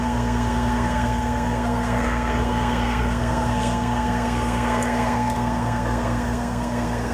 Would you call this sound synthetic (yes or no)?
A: yes